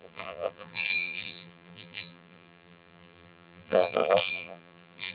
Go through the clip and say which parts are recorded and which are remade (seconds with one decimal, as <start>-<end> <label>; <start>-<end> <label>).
0.0-5.1 remade